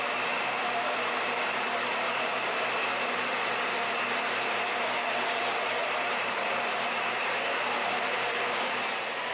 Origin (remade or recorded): remade